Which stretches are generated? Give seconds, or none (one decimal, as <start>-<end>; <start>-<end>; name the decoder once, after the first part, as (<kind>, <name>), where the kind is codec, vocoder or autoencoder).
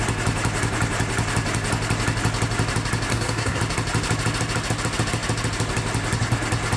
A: 3.1-3.6 (codec, SNAC)